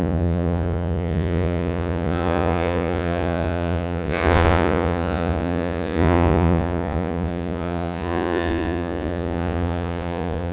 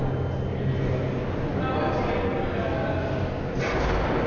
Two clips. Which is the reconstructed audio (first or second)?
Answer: first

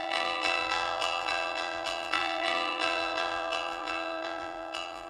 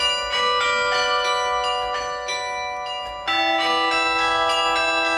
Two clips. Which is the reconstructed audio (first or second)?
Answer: first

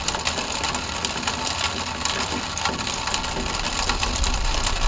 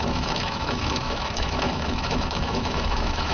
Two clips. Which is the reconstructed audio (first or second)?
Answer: second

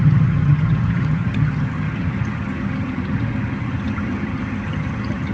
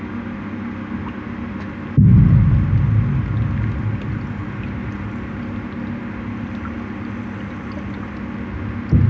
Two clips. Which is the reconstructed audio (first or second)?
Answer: first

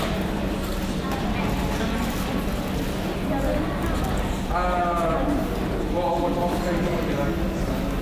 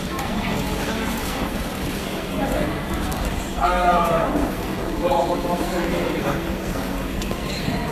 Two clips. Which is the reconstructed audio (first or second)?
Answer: second